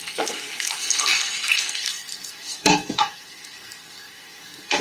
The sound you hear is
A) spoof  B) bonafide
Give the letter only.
A